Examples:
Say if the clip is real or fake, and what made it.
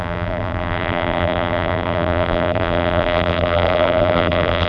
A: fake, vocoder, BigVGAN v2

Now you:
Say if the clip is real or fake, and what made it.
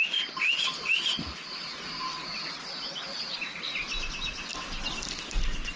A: real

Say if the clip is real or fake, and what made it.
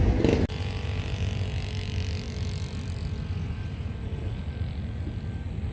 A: real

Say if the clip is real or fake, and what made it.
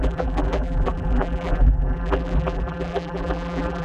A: fake, vocoder, BigVGAN v2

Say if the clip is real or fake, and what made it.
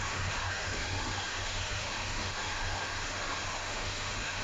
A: fake, autoencoder, DAC-VAE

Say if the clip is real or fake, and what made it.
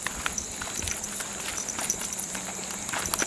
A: real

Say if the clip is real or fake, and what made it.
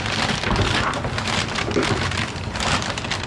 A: real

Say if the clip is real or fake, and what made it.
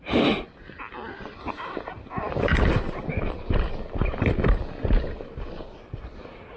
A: real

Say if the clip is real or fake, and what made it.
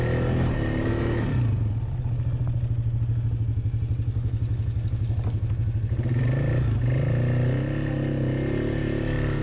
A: real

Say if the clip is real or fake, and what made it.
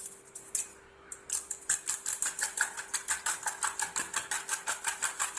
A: real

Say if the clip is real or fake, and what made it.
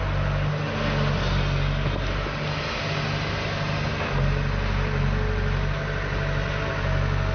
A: real